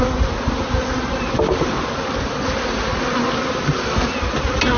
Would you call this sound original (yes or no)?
yes